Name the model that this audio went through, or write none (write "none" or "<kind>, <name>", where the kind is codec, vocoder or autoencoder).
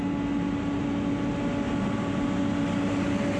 none